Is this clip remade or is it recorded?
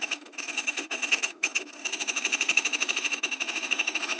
remade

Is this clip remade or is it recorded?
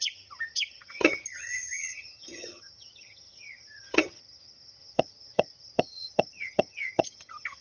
remade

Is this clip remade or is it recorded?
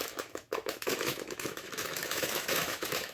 remade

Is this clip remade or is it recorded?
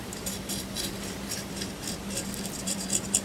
remade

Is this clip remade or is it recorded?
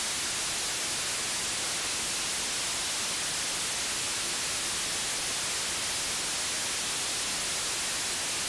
recorded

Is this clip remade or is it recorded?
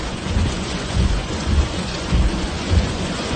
remade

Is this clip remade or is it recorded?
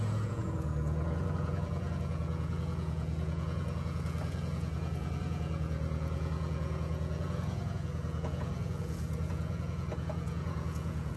remade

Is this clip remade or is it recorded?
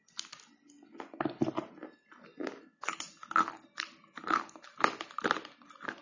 recorded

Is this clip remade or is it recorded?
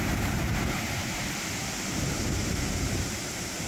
remade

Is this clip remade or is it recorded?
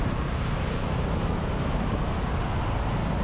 recorded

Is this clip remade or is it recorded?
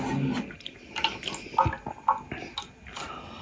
recorded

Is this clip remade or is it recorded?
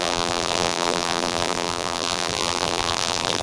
remade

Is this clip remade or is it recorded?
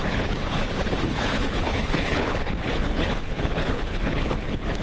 remade